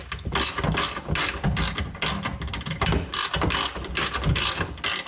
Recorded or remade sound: recorded